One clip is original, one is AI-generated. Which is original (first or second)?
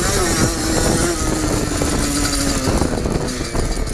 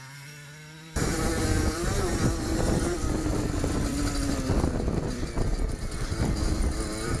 first